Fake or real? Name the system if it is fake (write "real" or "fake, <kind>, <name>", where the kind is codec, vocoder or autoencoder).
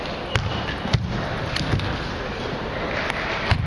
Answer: real